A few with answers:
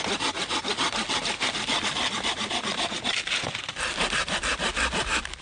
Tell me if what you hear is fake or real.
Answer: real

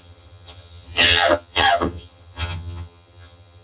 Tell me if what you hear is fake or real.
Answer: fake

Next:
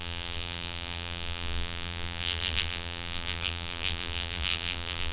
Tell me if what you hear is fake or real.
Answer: fake